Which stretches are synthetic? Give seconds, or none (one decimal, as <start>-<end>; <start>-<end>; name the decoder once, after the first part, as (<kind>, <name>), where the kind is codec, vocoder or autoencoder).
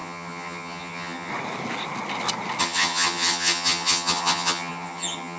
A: 0.0-1.3 (vocoder, HiFi-GAN); 2.6-5.4